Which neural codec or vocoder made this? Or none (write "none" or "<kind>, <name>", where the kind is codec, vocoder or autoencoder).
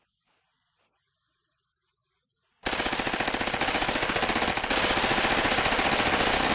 none